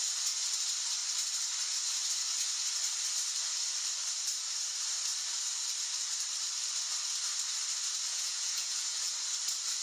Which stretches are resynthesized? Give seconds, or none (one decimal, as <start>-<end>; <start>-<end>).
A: 8.1-9.1